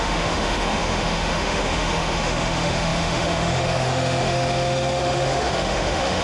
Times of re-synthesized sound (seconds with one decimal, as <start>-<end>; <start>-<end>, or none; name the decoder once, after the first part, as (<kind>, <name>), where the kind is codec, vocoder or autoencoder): 0.0-6.2 (autoencoder, DAC-VAE)